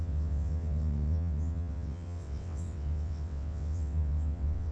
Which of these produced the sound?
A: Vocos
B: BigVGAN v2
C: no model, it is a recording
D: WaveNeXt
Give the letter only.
D